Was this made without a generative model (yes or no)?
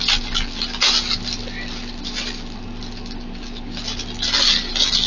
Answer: yes